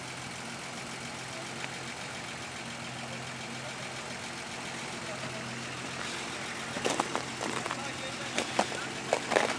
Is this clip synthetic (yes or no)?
no